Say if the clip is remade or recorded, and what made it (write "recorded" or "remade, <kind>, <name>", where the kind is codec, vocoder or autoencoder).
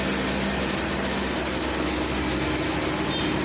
recorded